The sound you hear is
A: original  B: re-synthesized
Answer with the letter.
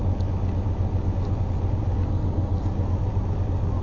A